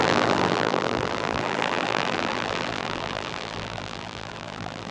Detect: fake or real fake